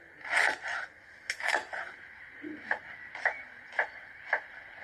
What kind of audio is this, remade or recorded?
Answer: recorded